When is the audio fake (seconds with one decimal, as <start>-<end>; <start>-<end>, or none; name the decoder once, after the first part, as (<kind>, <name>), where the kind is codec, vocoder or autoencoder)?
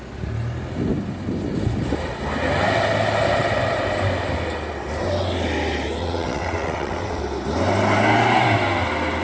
6.0-7.2 (vocoder, WaveNeXt)